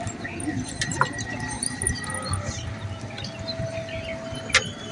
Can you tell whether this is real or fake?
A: real